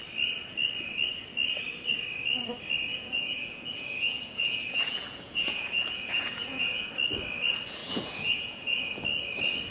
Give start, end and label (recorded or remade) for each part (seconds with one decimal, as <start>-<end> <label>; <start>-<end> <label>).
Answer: 0.0-2.9 recorded; 2.9-6.9 remade; 6.9-7.8 recorded; 7.8-9.0 remade; 9.0-9.7 recorded